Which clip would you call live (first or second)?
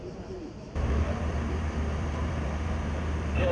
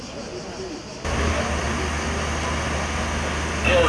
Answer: second